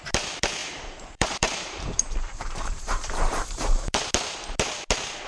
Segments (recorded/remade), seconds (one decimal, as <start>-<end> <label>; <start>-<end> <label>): 0.0-0.6 recorded; 0.6-3.8 remade; 3.8-5.3 recorded

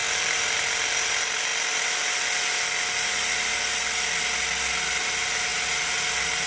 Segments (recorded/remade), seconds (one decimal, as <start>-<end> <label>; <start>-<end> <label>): 0.0-0.6 remade; 0.6-6.5 recorded

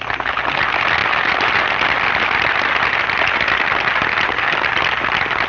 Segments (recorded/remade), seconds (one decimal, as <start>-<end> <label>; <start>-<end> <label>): 0.0-5.5 recorded

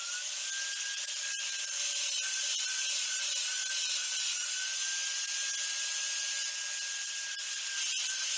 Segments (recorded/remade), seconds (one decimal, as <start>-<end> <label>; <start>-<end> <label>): 0.0-8.4 recorded